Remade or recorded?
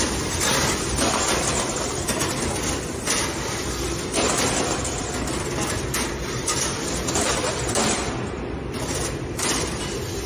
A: remade